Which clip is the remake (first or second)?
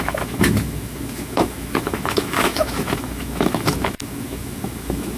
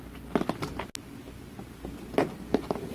first